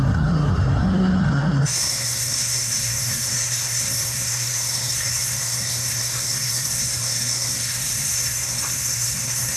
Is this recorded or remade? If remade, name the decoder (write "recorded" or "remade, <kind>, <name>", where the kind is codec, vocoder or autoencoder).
remade, codec, SNAC